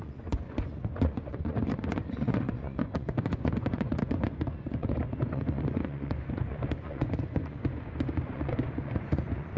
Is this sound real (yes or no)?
no